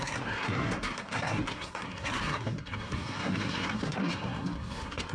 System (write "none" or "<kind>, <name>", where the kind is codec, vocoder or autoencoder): codec, SNAC